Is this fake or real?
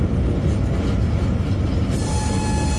real